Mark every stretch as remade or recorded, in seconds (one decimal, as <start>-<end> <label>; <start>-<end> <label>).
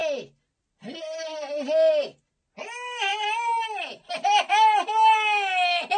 0.0-6.0 recorded